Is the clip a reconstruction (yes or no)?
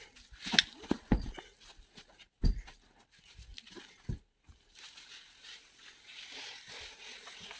no